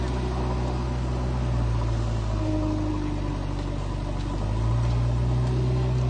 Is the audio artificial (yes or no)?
no